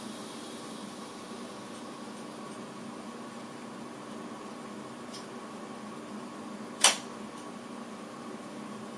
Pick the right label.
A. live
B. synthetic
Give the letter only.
A